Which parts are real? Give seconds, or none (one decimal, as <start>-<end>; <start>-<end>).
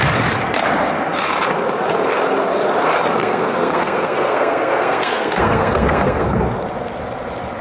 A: 0.0-3.2; 6.4-7.6